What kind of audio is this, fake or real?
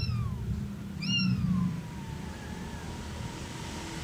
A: real